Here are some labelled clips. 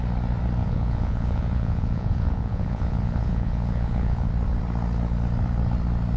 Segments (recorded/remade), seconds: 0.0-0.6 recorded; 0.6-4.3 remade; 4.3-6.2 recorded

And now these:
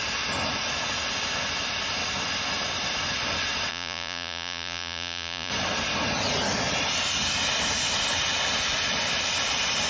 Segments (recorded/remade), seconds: 0.0-3.7 recorded; 3.7-5.5 remade; 5.5-9.9 recorded